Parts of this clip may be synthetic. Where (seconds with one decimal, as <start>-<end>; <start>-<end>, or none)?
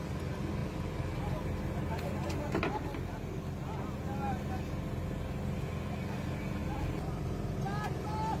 none